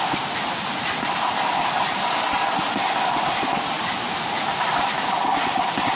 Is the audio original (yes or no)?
yes